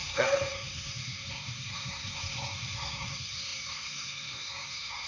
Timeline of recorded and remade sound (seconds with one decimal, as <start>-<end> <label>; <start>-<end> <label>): 0.0-5.1 remade